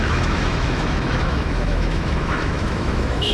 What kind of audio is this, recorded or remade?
remade